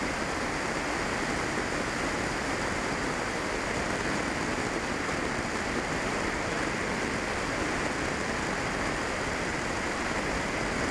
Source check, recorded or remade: recorded